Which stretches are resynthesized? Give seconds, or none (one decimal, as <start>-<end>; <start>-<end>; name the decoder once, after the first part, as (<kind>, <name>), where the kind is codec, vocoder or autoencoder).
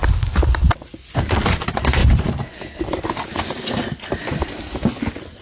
2.0-3.0 (vocoder, BigVGAN v2)